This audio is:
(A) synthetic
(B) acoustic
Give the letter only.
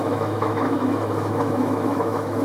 A